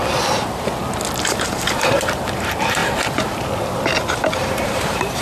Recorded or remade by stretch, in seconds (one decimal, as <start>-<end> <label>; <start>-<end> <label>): 0.0-1.1 recorded; 1.1-2.8 remade; 2.8-4.1 recorded; 4.1-5.2 remade